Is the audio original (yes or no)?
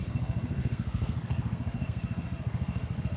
no